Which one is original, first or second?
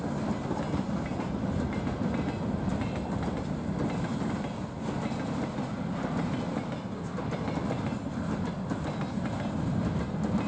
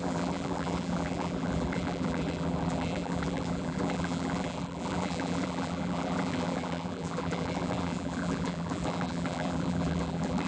first